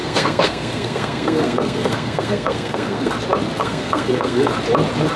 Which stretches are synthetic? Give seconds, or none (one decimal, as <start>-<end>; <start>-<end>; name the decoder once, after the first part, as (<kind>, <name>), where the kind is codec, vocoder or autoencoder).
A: 0.0-3.1 (codec, SNAC); 3.6-4.5